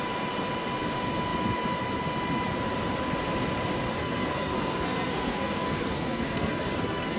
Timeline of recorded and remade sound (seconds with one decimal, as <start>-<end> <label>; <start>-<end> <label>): 0.0-4.0 recorded; 4.0-7.2 remade